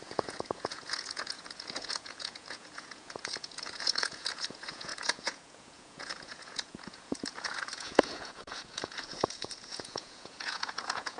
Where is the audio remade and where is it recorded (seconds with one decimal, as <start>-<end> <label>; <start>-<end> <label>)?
0.0-11.2 remade